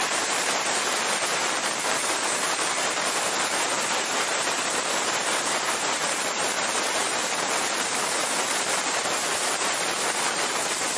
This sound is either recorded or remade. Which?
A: remade